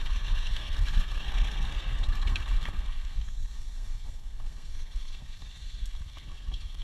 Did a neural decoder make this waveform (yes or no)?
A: yes